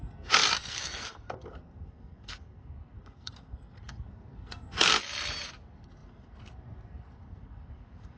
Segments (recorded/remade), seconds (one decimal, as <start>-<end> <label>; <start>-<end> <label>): 0.0-4.9 remade; 4.9-5.6 recorded; 5.6-8.2 remade